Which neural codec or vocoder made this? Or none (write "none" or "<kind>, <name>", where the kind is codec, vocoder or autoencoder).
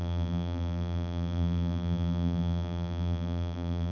vocoder, BigVGAN v2